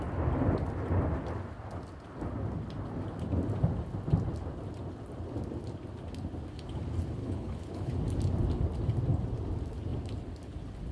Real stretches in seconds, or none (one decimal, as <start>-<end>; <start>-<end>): 0.0-7.2; 7.9-10.9